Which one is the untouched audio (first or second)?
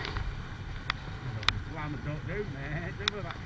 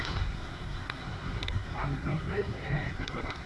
first